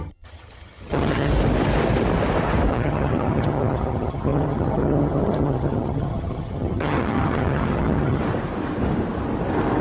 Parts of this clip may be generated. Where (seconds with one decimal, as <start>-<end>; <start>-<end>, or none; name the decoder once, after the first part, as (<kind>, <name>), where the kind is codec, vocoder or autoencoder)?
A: 0.0-1.3 (vocoder, HiFi-GAN); 2.7-8.2